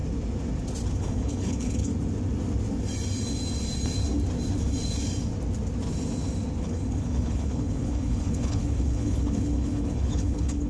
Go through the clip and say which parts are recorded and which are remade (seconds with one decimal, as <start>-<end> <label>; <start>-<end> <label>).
0.0-1.0 recorded; 1.0-1.9 remade; 1.9-6.6 recorded; 6.6-10.7 remade